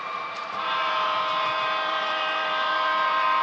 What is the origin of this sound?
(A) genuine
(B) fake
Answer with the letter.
B